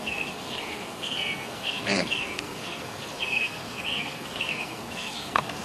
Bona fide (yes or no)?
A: no